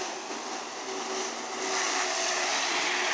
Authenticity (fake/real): real